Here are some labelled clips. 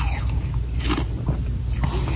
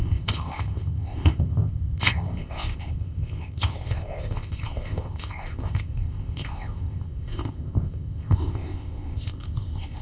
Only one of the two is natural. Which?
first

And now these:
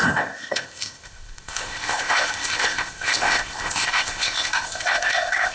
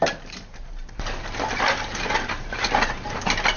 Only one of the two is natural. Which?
second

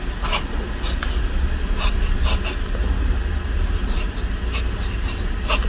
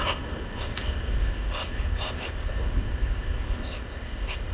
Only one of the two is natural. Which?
first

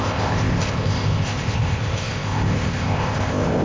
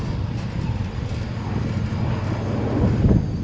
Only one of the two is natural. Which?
second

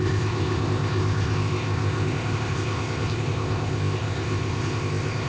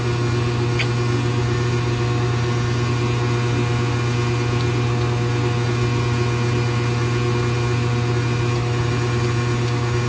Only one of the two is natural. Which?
second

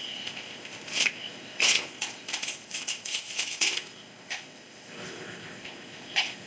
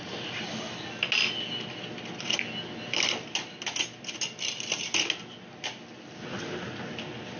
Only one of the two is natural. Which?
second